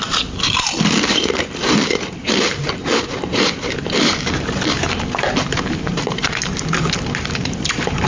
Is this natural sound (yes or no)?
no